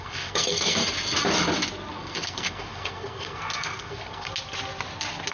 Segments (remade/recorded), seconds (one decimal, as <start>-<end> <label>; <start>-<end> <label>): 0.0-0.8 remade; 0.8-1.9 recorded; 1.9-4.3 remade; 4.3-5.3 recorded